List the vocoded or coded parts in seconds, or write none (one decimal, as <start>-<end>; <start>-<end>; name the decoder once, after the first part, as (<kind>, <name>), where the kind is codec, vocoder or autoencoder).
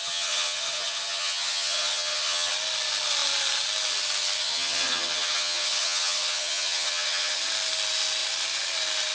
0.0-2.5 (vocoder, HiFi-GAN); 4.4-7.4